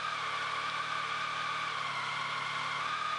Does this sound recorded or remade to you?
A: recorded